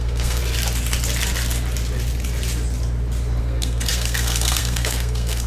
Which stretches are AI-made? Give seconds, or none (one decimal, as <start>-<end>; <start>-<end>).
0.0-0.4; 3.4-5.5